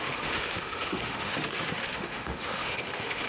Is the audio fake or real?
fake